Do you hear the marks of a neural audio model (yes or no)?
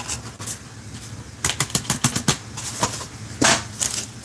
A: no